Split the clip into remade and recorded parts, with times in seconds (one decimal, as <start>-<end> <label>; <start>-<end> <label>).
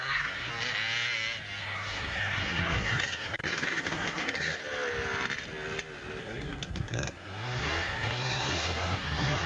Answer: 0.0-0.5 remade; 0.5-1.6 recorded; 1.6-4.6 remade; 4.6-6.2 recorded; 6.2-9.5 remade